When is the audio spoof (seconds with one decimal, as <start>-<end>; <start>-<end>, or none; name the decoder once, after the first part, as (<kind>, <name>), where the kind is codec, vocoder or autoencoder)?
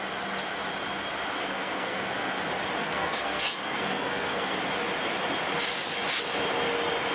1.4-2.4 (codec, SNAC); 2.8-4.6